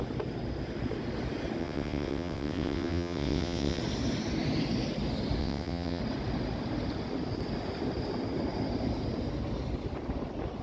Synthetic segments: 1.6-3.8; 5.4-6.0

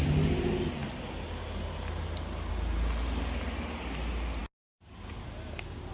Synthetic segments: none